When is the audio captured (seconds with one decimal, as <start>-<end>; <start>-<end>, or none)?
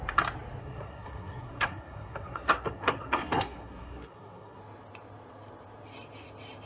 0.0-0.6; 4.6-6.7